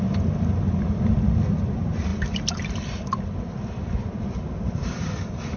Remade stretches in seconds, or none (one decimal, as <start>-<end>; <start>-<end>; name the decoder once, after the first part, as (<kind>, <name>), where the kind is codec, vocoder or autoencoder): none